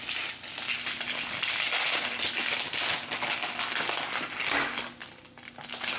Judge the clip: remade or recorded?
recorded